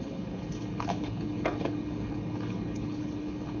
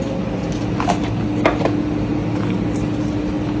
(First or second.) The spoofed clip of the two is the first